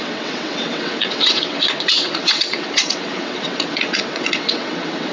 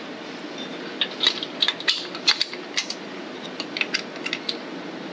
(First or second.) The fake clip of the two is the first